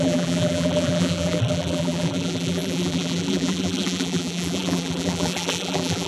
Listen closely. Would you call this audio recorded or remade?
remade